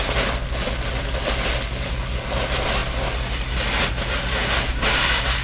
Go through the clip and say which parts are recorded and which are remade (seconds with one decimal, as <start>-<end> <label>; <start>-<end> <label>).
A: 0.0-5.4 recorded